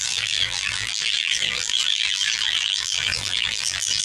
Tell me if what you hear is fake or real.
fake